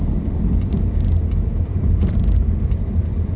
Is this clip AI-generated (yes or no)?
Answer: yes